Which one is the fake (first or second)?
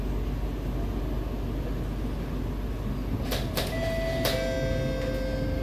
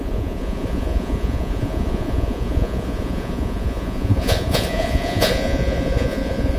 second